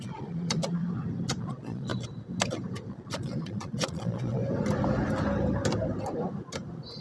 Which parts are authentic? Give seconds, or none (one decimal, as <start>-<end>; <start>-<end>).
0.8-1.4; 1.9-2.9; 4.4-7.0